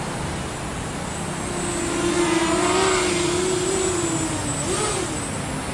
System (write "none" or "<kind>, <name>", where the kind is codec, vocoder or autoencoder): none